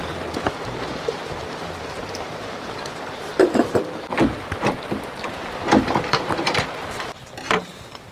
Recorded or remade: remade